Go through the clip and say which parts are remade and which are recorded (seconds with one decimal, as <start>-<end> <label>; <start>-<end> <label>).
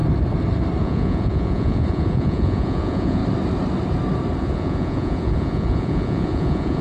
0.0-0.8 recorded; 0.8-3.2 remade; 3.2-4.4 recorded; 4.4-6.8 remade